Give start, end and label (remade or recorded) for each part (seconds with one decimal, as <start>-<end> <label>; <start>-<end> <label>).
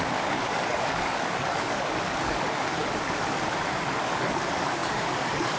0.0-2.8 remade; 2.8-3.7 recorded; 3.7-5.6 remade